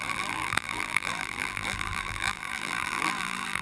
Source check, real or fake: fake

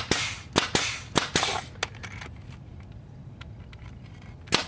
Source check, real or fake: real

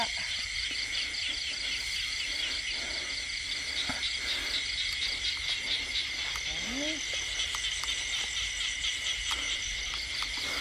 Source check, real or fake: real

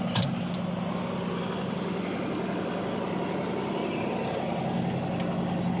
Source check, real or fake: real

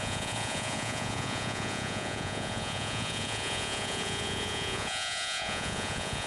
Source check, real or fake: fake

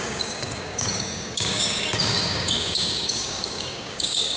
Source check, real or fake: fake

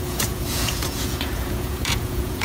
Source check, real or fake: fake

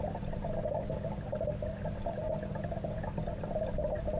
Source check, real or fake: real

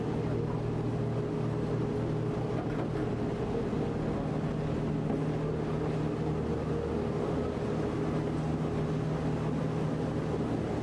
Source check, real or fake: real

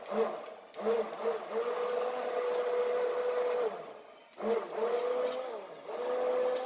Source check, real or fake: real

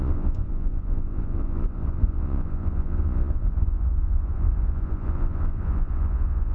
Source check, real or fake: fake